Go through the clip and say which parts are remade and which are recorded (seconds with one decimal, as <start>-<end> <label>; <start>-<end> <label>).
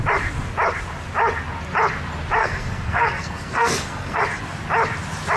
0.0-2.4 recorded; 2.4-4.2 remade; 4.2-5.4 recorded